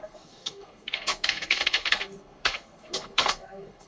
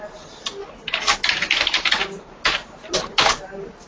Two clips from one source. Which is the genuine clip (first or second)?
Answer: second